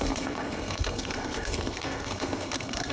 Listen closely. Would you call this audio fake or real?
fake